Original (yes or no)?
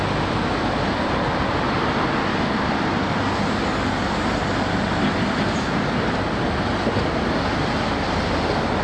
yes